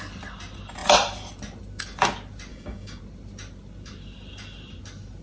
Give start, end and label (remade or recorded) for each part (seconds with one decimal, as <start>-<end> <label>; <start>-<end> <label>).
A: 0.0-2.5 recorded; 2.5-3.0 remade; 3.0-5.2 recorded